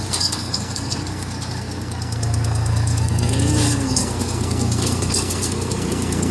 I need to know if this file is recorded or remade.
remade